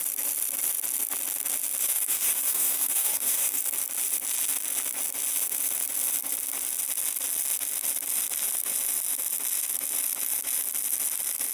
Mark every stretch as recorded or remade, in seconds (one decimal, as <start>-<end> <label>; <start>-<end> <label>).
0.0-1.8 recorded; 1.8-3.6 remade; 3.6-11.5 recorded